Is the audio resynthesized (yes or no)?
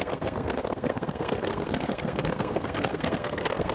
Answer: yes